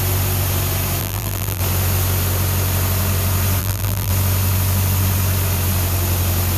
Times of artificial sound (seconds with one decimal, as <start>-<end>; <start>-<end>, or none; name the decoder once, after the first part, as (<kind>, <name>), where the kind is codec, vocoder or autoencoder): 1.0-1.6 (vocoder, BigVGAN v2); 3.6-4.1